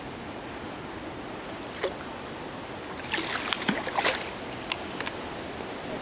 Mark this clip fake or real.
real